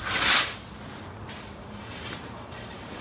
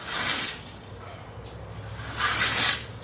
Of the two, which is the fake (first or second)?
first